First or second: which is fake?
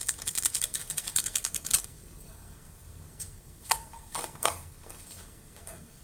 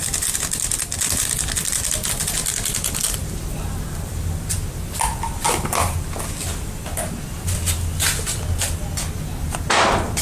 first